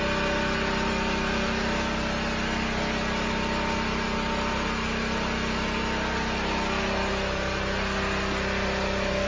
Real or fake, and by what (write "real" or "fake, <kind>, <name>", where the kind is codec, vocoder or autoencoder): real